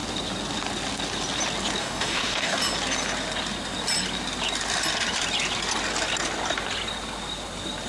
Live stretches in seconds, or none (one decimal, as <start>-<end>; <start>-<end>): 0.0-1.8; 2.6-7.9